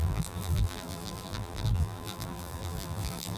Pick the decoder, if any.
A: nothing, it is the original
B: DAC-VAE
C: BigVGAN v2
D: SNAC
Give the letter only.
C